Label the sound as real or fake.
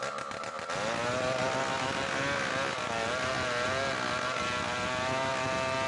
real